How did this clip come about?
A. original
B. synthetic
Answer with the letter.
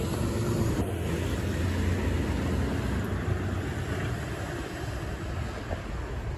A